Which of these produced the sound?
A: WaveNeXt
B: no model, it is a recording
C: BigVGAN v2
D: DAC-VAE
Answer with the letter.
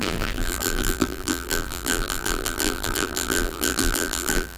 C